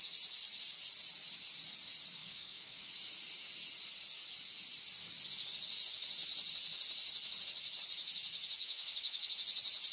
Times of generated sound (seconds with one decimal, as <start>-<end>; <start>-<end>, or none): 2.2-2.9; 8.6-9.3